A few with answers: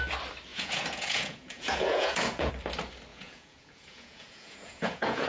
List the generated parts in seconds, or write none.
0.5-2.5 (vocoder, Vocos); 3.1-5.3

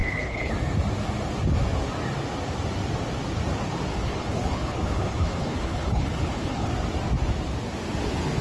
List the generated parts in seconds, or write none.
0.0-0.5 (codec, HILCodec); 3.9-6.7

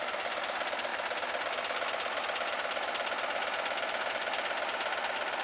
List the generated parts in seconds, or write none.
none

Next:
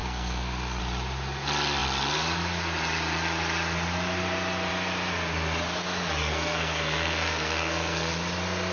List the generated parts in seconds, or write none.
0.0-0.8 (codec, SNAC); 6.2-8.1